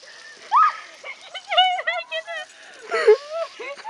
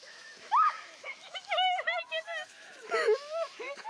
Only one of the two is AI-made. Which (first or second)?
second